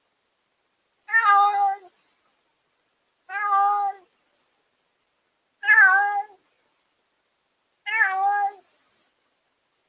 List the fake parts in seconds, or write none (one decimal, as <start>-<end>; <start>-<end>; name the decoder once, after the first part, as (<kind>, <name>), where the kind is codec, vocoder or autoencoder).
none